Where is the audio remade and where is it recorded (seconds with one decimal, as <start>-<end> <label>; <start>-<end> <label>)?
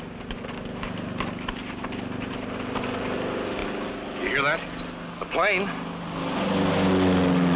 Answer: 0.0-7.6 recorded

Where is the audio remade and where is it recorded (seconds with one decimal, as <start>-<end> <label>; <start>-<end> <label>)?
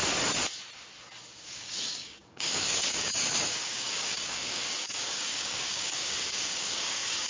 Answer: 0.0-1.4 recorded; 1.4-7.3 remade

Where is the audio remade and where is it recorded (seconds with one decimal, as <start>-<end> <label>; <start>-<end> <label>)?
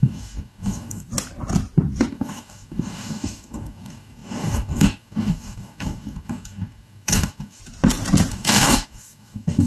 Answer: 0.0-1.1 remade; 1.1-2.1 recorded; 2.1-7.6 remade; 7.6-8.3 recorded; 8.3-9.7 remade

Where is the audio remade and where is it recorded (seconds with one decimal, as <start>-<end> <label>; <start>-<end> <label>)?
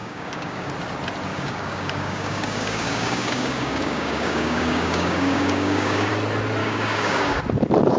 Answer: 0.0-0.7 remade; 0.7-1.3 recorded; 1.3-6.1 remade; 6.1-6.6 recorded; 6.6-7.4 remade; 7.4-8.0 recorded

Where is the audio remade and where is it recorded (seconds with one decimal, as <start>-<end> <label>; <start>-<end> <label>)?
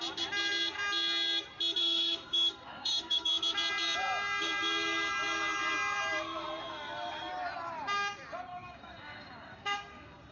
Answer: 0.0-1.8 recorded; 1.8-3.3 remade; 3.3-8.5 recorded; 8.5-10.3 remade